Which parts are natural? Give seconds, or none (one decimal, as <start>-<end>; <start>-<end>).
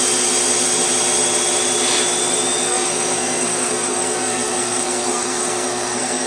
0.0-2.7